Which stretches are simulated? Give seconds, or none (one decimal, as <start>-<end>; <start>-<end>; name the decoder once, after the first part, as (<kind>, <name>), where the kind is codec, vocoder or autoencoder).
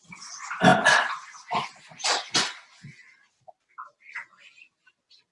none